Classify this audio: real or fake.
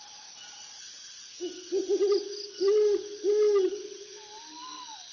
real